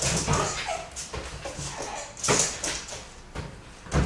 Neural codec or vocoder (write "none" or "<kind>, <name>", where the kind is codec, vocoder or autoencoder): none